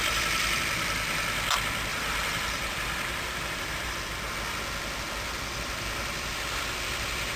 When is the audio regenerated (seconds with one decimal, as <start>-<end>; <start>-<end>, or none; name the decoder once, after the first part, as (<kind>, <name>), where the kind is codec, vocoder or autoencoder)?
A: 1.9-4.0 (vocoder, BigVGAN v2)